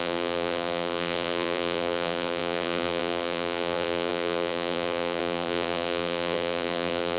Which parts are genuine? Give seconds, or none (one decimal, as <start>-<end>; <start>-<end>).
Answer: none